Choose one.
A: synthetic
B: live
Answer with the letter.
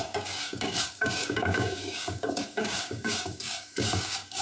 A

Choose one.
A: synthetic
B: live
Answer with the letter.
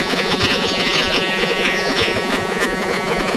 A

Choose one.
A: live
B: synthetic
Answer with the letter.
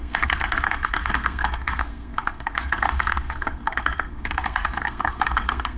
B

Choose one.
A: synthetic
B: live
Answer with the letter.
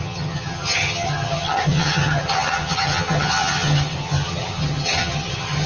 A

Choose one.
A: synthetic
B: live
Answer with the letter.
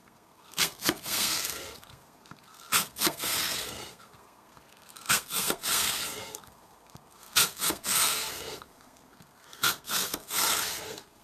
A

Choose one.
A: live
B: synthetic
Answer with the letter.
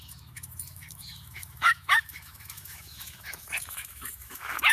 B